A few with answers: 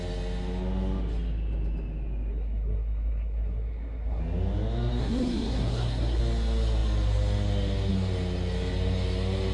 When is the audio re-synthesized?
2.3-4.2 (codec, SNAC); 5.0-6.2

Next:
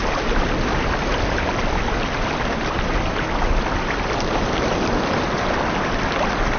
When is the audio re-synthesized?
none

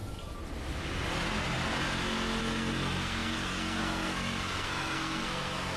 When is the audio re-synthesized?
2.4-5.8 (codec, SNAC)